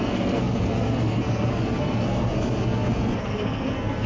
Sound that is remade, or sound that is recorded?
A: remade